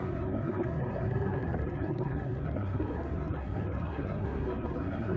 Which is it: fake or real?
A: fake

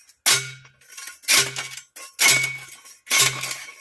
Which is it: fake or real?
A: real